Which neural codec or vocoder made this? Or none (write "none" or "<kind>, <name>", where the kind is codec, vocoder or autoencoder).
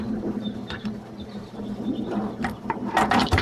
vocoder, BigVGAN v2